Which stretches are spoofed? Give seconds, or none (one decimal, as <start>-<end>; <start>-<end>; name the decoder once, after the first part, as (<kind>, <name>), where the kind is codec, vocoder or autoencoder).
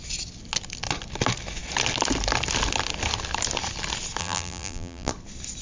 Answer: 4.2-5.1 (vocoder, BigVGAN v2)